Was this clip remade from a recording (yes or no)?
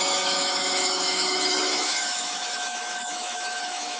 yes